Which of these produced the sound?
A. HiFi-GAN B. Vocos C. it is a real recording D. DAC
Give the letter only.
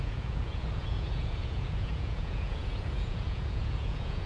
B